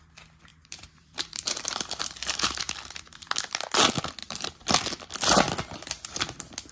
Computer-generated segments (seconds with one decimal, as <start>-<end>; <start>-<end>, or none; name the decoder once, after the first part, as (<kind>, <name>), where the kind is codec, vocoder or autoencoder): 0.5-2.6 (vocoder, BigVGAN v2); 4.2-4.8